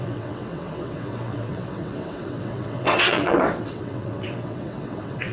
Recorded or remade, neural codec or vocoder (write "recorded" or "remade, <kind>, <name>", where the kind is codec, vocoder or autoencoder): remade, vocoder, WaveNeXt